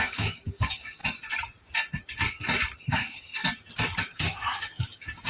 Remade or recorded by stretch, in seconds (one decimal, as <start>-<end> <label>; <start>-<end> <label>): 0.0-1.0 remade; 1.0-2.9 recorded; 2.9-3.3 remade; 3.3-4.0 recorded; 4.0-5.3 remade